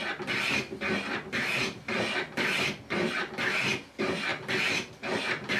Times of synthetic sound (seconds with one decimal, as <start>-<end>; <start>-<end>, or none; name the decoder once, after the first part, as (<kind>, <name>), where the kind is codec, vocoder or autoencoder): none